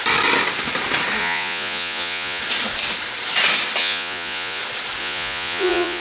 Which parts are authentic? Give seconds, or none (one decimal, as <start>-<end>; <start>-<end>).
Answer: 0.0-1.2; 2.4-3.8; 4.6-5.0